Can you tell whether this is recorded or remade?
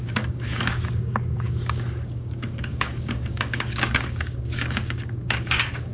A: remade